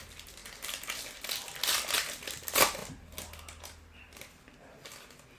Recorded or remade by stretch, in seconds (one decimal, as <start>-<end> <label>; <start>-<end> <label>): 0.0-5.4 recorded